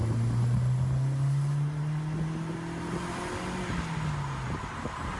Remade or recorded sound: recorded